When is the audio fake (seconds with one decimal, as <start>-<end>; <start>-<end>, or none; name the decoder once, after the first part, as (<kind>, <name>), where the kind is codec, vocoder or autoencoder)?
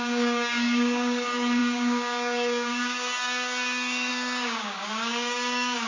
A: 0.0-5.9 (codec, DAC)